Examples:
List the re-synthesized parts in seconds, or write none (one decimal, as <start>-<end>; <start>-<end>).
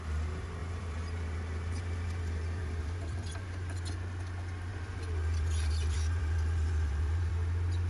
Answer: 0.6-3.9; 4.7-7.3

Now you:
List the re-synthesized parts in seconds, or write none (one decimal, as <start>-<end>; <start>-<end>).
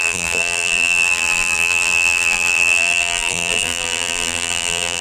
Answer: 0.0-5.0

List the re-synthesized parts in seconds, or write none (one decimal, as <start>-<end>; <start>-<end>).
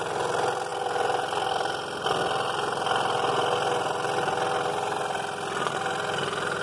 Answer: none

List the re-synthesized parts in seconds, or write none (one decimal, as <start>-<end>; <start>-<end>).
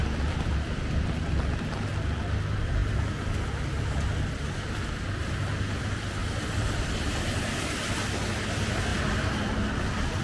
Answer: 0.0-1.9; 6.2-6.9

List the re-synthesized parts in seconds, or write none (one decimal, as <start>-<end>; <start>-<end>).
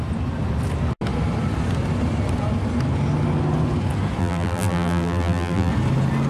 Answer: 4.2-5.7